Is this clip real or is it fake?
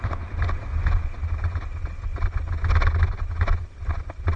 real